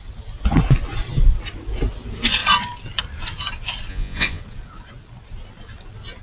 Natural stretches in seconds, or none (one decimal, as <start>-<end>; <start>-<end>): 0.0-3.9; 4.4-6.2